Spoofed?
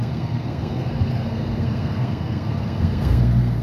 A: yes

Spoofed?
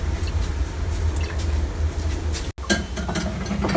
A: no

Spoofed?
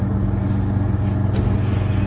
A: no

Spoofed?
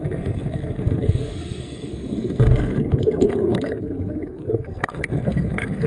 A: yes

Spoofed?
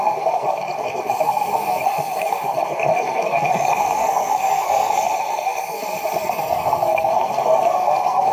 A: yes